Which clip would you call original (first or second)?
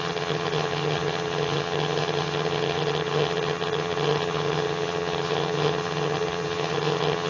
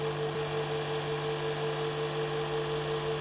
second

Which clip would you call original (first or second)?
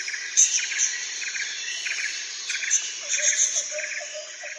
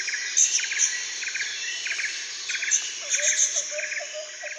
second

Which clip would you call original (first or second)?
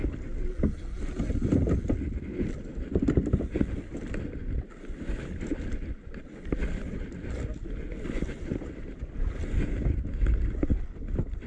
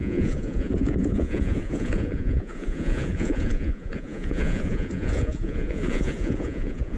first